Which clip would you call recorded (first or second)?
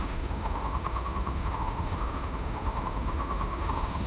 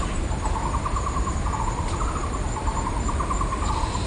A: second